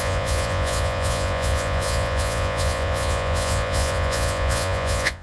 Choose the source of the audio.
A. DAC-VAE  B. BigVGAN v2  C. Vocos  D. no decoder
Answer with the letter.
C